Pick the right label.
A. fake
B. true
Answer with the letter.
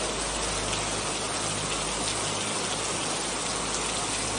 B